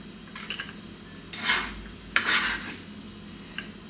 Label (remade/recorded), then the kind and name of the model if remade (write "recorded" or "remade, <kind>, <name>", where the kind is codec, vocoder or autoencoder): recorded